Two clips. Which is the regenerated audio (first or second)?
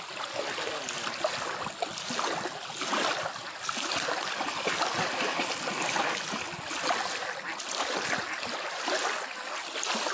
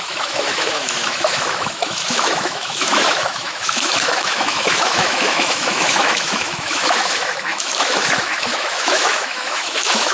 second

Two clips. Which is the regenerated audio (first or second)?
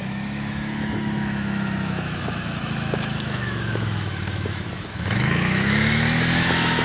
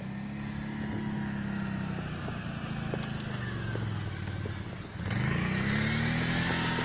first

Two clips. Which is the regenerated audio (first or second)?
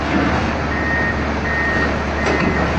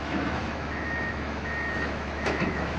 second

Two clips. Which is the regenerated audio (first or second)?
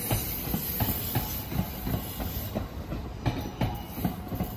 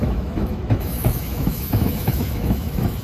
second